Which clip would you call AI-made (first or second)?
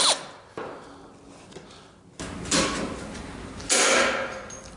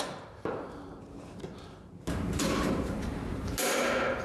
second